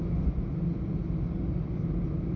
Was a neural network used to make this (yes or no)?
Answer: no